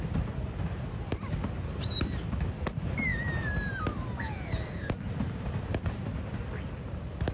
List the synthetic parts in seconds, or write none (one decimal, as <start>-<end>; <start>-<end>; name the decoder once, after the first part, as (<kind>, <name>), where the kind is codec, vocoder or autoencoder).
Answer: none